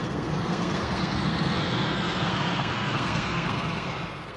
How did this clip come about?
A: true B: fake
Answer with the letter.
B